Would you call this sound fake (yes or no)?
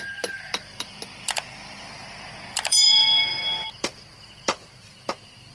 yes